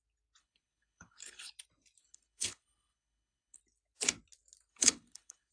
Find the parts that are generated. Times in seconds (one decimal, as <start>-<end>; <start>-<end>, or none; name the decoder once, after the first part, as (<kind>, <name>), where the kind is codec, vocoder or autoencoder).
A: 0.4-1.5 (codec, HILCodec); 2.0-3.6; 4.7-5.5